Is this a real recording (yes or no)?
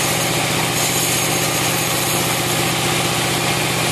yes